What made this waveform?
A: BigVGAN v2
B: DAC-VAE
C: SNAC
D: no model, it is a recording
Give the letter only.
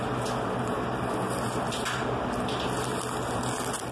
D